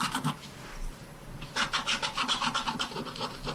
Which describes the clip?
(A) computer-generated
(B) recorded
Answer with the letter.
A